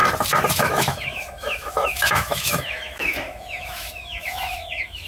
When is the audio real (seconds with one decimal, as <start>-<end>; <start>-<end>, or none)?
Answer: 0.0-0.5

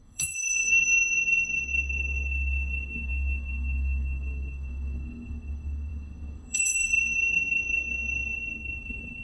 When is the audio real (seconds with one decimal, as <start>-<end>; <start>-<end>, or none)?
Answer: none

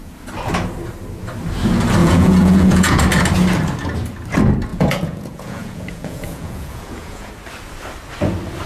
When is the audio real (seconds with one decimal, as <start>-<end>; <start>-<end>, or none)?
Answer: 0.0-2.0; 3.0-4.7; 7.3-8.7

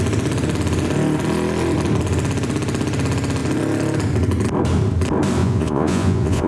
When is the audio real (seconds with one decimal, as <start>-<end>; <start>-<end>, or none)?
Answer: 0.0-5.4

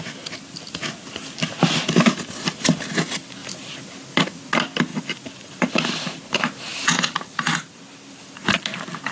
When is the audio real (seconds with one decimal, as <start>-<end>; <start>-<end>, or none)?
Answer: 0.0-3.4; 4.2-4.9; 5.7-6.7; 8.6-9.1

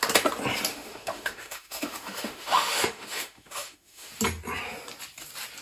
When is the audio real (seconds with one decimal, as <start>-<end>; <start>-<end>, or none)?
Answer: 0.0-0.7; 4.1-5.6

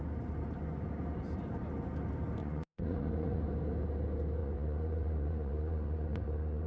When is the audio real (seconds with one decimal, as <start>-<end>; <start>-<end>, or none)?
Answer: 0.0-2.4; 3.4-4.4

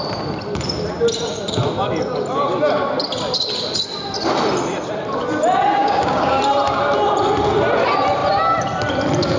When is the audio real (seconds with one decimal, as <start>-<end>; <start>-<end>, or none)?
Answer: 0.0-5.8; 6.4-9.4